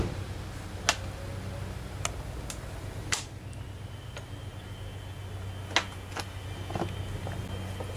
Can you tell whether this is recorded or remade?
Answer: recorded